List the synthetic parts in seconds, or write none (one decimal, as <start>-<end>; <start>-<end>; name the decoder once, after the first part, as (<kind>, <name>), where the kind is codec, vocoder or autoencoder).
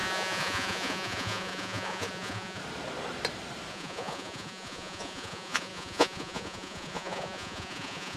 0.0-2.6 (vocoder, Vocos); 3.7-8.2